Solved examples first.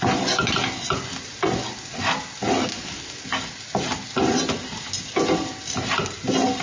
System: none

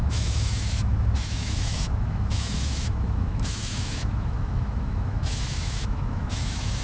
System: autoencoder, DAC-VAE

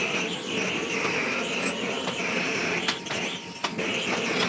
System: none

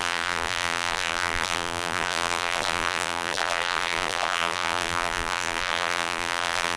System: vocoder, BigVGAN v2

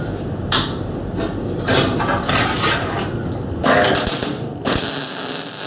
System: none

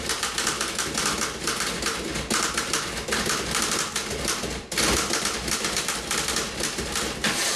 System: none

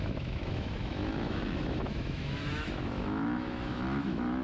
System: autoencoder, DAC-VAE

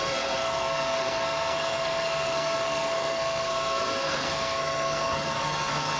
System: codec, SNAC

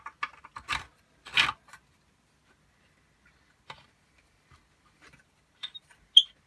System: none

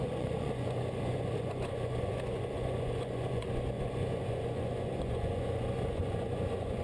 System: vocoder, Vocos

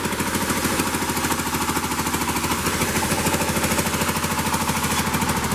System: none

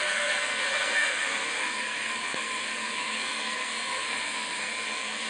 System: codec, SNAC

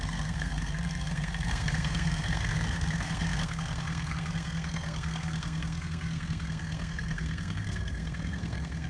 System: codec, SNAC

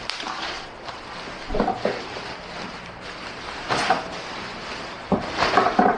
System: vocoder, BigVGAN v2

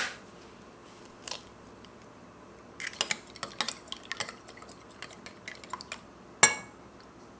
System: none